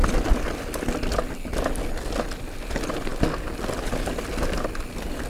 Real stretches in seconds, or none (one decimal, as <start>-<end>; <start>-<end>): 0.0-5.3